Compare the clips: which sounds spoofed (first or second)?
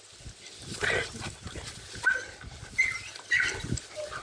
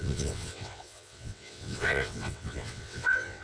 second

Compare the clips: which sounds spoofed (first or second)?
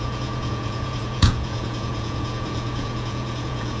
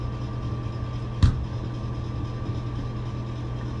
first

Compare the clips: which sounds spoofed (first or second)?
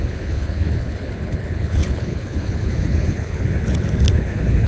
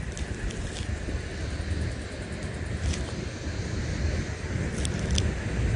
first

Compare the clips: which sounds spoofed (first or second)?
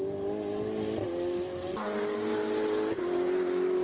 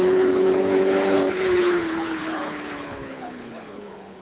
second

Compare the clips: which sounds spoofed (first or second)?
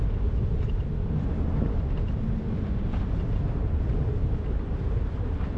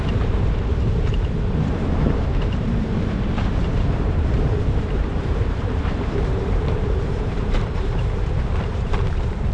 second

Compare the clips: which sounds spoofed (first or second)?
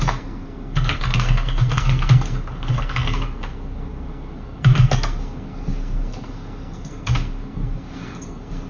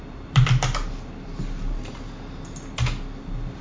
first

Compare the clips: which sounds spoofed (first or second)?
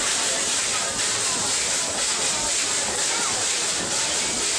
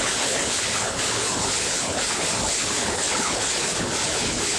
second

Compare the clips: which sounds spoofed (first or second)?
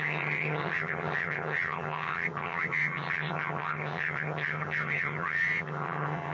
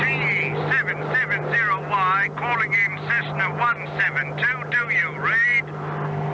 first